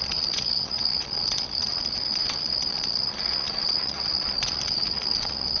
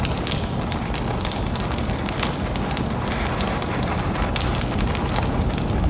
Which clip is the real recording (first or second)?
second